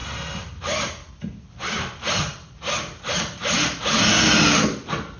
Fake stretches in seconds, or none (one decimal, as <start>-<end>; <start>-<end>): 0.0-2.6